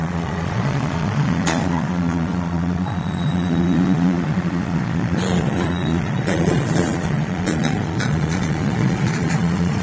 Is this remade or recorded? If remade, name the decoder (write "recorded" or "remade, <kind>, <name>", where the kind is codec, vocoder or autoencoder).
remade, vocoder, Vocos